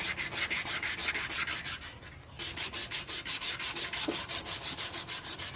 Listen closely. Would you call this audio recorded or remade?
recorded